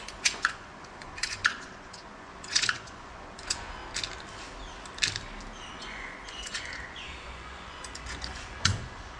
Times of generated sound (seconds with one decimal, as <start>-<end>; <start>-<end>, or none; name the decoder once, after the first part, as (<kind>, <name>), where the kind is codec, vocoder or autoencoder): 0.0-3.8 (vocoder, Vocos); 5.7-9.2